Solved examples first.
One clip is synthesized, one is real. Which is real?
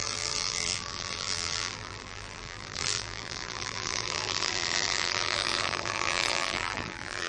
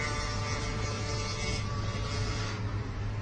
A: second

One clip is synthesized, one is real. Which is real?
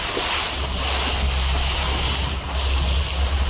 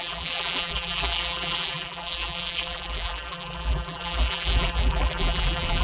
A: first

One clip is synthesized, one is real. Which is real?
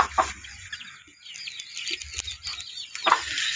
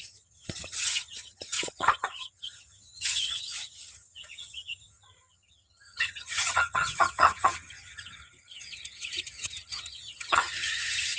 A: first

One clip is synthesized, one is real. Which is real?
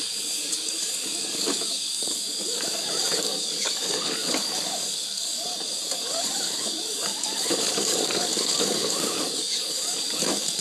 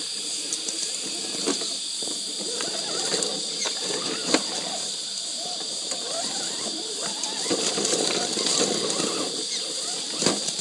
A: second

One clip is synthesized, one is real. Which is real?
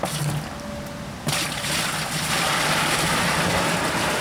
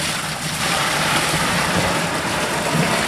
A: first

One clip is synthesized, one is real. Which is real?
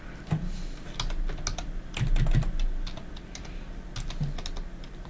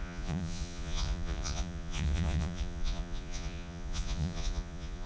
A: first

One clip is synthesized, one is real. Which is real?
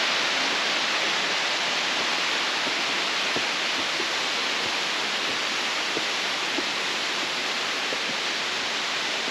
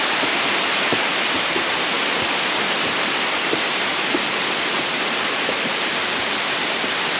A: first